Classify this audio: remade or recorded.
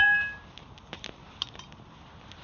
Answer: recorded